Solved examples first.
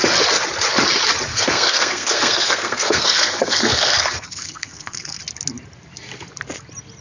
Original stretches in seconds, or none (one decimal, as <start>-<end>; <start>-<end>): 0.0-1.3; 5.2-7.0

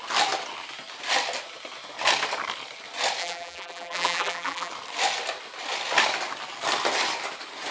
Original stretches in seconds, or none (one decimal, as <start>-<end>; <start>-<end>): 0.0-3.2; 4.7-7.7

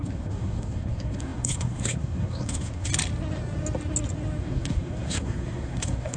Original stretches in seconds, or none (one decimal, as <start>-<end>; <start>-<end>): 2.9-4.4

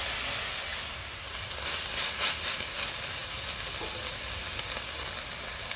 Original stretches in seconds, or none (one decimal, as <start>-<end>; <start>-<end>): 0.0-0.7; 1.4-5.8

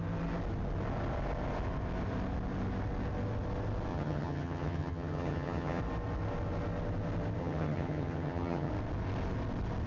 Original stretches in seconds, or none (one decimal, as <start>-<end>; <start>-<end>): 0.0-3.9; 5.8-7.4; 8.7-9.9

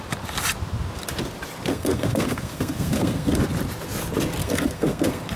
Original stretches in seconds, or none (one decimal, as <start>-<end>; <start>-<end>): 0.0-1.7; 3.4-4.4

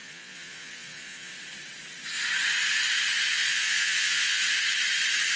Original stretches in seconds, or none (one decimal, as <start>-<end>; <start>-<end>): 1.3-3.3; 4.4-5.4

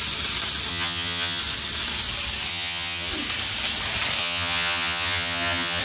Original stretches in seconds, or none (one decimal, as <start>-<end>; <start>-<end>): 0.0-0.7; 1.4-2.5; 3.1-4.2